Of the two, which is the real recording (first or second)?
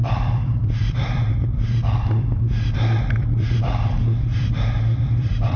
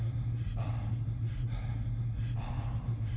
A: second